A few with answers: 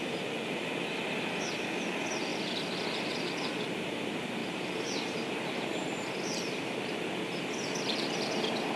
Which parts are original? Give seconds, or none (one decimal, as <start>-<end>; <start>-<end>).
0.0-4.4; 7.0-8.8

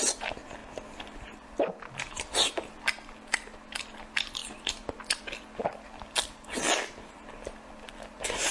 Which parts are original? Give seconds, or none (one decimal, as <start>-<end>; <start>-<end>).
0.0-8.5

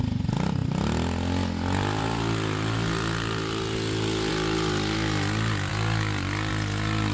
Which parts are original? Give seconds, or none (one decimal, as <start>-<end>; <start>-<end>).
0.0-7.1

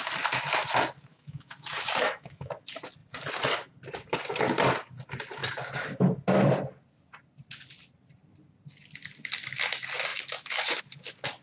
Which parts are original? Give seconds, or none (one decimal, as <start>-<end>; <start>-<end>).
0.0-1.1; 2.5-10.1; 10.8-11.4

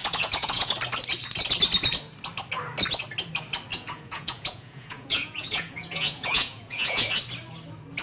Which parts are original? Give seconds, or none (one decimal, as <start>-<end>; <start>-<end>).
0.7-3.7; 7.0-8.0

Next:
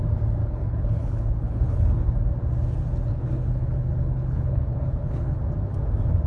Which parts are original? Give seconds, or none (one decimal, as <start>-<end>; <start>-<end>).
0.0-0.4; 2.1-3.1; 5.4-6.3

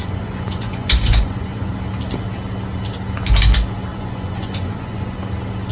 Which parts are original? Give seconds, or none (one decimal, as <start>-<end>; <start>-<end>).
1.7-3.9; 5.2-5.7

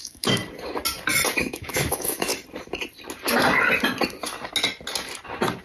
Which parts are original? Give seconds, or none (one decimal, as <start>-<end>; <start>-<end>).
0.4-1.4; 2.3-5.6